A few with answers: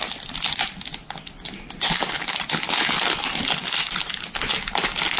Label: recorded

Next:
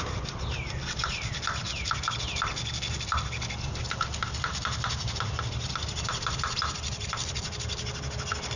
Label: recorded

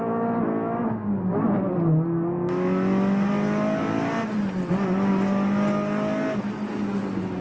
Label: recorded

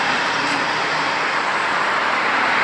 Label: remade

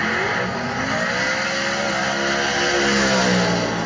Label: recorded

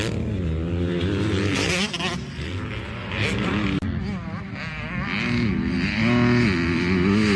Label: recorded